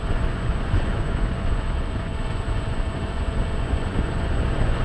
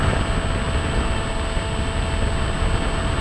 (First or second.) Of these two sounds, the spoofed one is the first